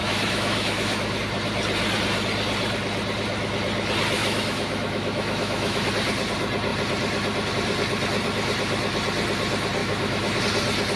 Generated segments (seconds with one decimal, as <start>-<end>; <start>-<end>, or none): 0.0-1.2; 4.2-5.9; 9.8-10.4